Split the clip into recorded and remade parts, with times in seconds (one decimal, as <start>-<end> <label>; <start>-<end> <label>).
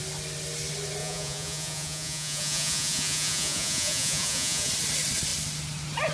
0.0-1.0 recorded; 1.0-4.7 remade; 4.7-6.1 recorded